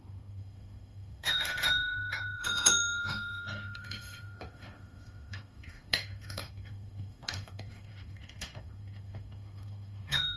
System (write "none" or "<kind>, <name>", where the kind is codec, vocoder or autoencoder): autoencoder, DAC-VAE